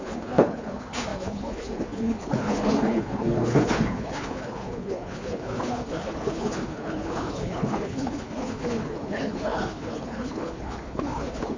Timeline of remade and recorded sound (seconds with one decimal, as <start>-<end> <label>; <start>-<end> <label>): 0.0-11.6 remade